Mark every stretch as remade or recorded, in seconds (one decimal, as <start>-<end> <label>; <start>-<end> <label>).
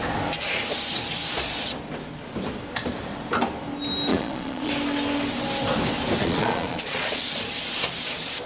0.0-4.1 recorded; 4.1-4.7 remade; 4.7-6.2 recorded; 6.2-7.2 remade; 7.2-8.5 recorded